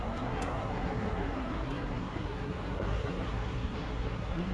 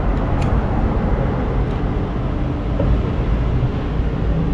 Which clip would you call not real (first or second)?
first